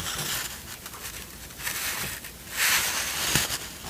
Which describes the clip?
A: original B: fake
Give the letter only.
A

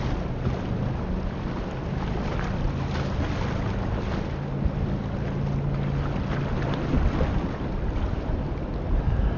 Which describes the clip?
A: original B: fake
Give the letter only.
A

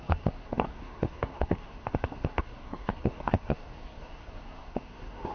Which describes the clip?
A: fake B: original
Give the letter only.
A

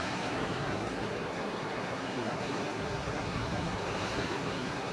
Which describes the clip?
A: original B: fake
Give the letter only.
B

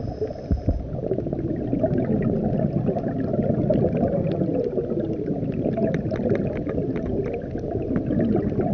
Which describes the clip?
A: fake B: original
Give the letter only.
B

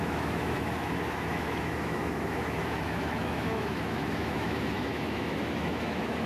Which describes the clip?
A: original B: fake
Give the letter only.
B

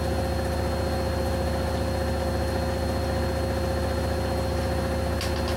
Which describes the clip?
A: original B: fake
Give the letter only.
A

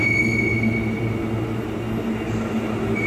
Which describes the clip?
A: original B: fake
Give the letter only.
A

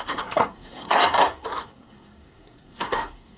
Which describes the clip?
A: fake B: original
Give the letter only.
A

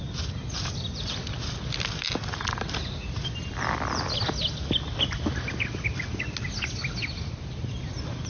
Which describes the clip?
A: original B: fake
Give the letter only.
A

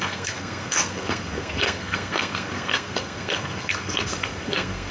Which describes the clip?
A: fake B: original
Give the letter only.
A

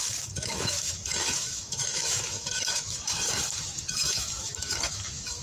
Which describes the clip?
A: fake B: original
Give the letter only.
A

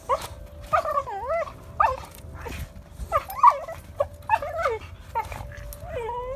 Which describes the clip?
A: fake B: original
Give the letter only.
B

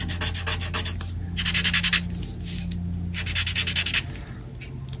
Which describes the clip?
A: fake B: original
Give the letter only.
B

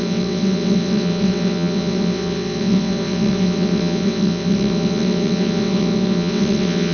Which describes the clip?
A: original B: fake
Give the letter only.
B